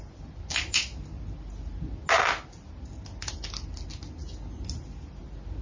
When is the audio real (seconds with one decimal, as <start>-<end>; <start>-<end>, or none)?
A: 0.0-5.6